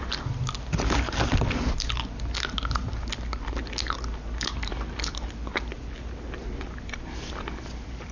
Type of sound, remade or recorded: recorded